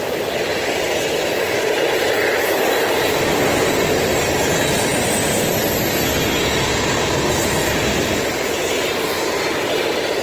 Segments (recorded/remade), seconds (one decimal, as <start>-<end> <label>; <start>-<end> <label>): 0.0-10.2 recorded